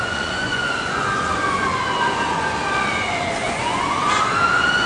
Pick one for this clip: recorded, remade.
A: remade